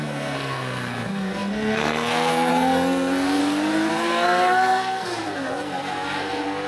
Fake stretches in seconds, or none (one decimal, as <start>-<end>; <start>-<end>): 0.0-3.4; 3.9-6.7